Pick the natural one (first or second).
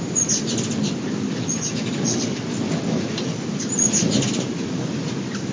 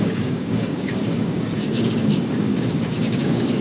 first